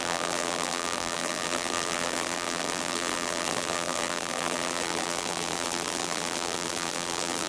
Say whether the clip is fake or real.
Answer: fake